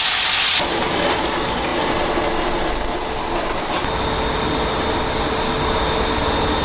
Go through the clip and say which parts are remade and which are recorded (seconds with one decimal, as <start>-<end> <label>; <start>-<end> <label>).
0.0-6.6 recorded